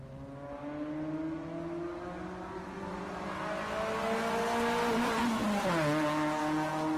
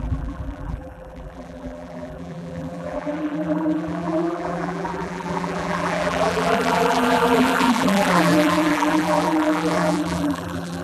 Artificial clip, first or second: second